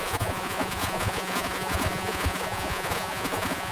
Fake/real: fake